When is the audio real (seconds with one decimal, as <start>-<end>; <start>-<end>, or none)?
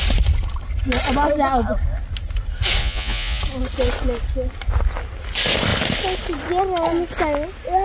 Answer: 0.0-2.8; 3.4-7.8